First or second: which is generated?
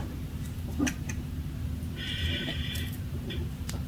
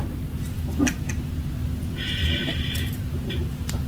first